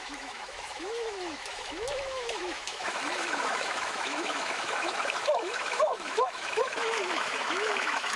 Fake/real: fake